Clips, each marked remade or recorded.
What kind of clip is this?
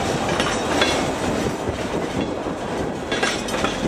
recorded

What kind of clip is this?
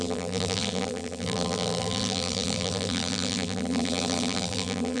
remade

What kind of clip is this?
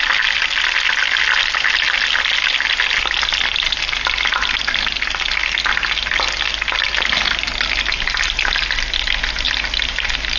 recorded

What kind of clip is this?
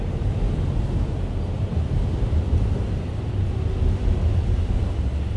recorded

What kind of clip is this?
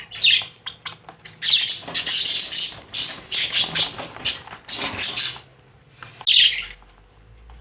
recorded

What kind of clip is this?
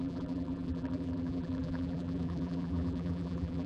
remade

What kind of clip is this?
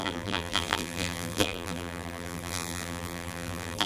remade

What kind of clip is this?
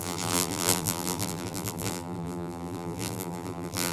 remade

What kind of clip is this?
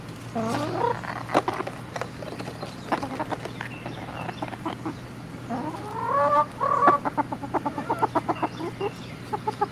recorded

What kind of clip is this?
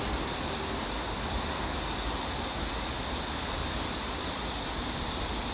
recorded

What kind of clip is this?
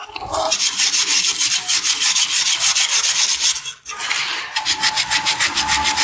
recorded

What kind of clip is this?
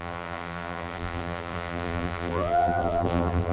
remade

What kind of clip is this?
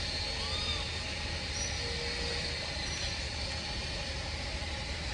recorded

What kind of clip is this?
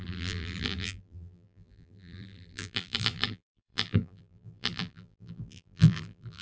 remade